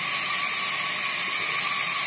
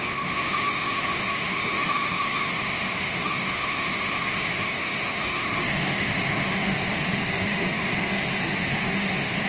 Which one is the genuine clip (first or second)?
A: first